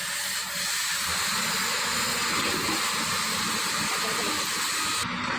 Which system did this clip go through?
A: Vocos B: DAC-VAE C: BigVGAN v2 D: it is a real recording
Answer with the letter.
D